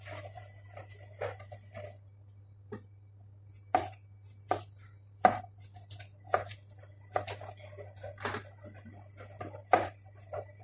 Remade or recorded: recorded